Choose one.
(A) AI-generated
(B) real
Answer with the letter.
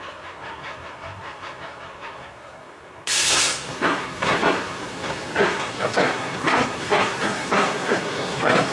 A